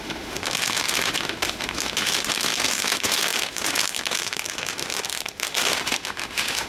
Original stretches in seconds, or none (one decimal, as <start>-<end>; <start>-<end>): none